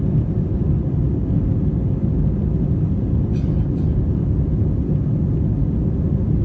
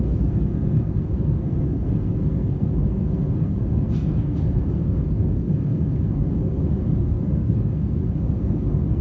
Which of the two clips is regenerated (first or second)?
second